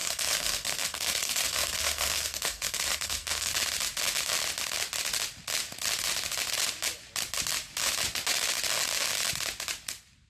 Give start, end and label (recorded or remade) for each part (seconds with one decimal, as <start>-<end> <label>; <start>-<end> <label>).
0.0-3.5 remade; 3.5-10.3 recorded